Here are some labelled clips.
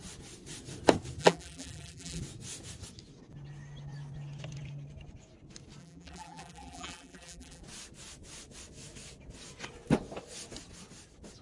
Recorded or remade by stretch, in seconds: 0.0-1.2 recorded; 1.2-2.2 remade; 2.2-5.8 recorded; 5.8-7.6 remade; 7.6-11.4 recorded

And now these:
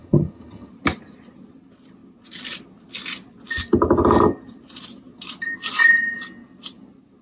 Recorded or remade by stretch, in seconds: 0.0-0.7 remade; 0.7-7.2 recorded

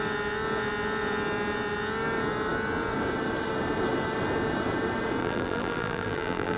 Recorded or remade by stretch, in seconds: 0.0-5.2 recorded; 5.2-6.6 remade

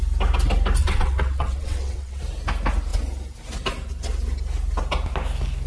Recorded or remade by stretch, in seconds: 0.0-0.8 recorded; 0.8-2.2 remade; 2.2-5.7 recorded